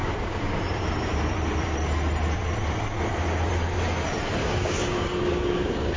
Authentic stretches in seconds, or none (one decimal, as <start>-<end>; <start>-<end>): 0.6-4.4